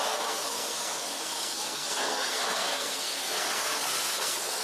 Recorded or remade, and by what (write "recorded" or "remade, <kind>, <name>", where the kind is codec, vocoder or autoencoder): remade, codec, SNAC